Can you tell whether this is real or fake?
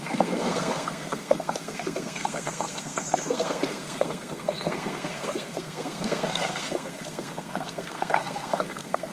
fake